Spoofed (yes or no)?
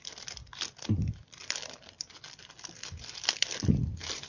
no